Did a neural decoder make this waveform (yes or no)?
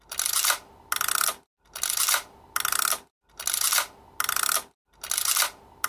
no